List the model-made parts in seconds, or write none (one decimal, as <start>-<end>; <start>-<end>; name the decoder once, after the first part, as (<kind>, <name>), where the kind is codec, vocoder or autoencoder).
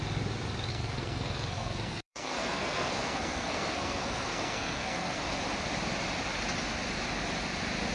0.7-5.2 (codec, SNAC)